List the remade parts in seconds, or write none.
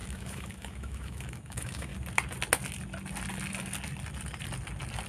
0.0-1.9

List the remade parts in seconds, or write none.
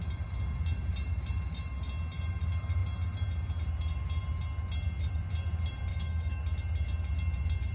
5.9-6.4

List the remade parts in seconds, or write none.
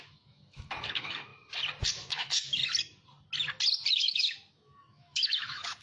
0.0-1.3; 1.9-2.6; 3.9-5.8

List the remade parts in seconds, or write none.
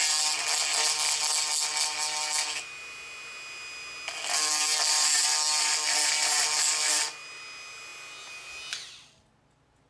none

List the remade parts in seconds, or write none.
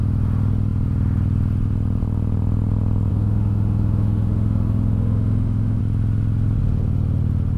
3.1-5.8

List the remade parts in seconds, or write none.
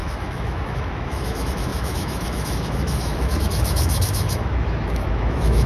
0.0-5.7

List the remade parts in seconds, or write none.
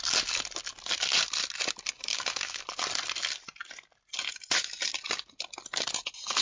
2.1-2.6